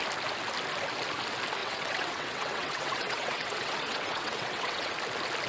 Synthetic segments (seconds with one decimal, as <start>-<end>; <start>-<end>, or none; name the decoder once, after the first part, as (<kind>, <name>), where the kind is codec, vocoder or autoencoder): 1.6-4.9 (vocoder, WaveNeXt)